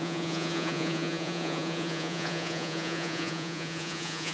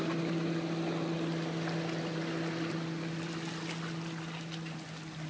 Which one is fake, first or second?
first